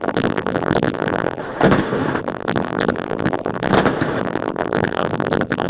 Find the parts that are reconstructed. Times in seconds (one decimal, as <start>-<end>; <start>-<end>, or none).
0.0-1.4; 2.2-3.7; 4.2-5.7